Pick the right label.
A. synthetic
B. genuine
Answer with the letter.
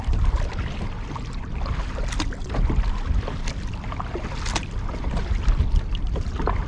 B